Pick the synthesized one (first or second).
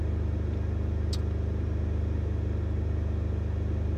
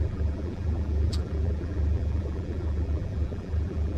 second